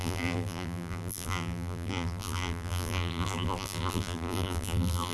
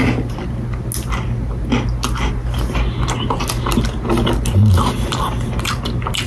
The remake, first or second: first